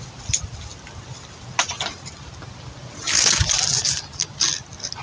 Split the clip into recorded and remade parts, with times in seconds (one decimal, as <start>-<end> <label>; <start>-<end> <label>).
0.0-5.0 recorded